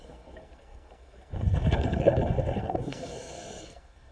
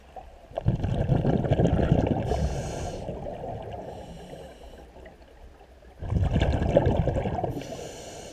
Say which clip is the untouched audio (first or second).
second